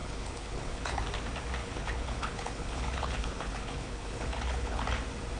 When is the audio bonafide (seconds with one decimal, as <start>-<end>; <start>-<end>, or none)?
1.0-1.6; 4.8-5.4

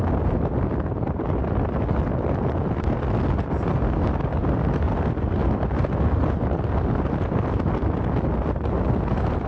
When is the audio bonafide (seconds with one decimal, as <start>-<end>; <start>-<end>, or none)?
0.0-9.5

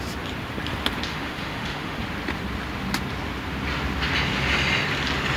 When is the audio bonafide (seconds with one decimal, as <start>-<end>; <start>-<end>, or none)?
0.0-1.1; 2.0-5.4